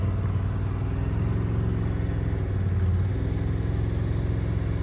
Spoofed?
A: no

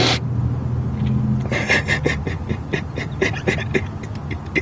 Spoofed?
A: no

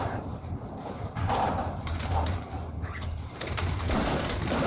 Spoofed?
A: yes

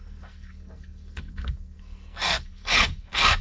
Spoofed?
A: yes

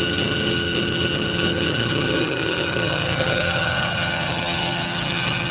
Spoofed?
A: yes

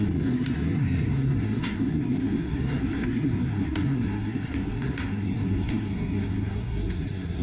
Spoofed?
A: yes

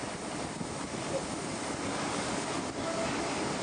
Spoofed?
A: no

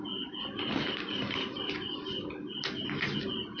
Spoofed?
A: no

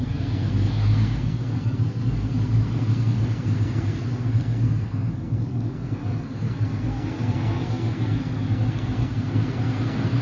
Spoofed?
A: yes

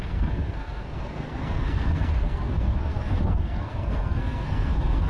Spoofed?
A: yes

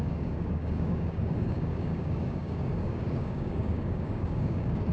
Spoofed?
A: yes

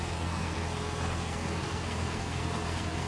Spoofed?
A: yes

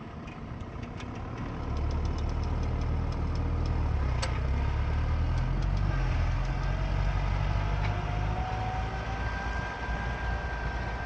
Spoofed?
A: no